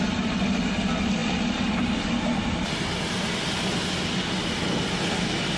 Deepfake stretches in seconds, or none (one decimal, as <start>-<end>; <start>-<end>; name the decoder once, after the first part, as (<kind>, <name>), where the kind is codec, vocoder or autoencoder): none